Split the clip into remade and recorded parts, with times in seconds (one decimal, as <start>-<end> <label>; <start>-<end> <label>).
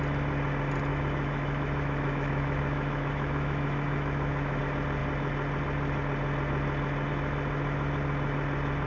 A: 0.0-0.9 recorded; 0.9-4.6 remade; 4.6-8.9 recorded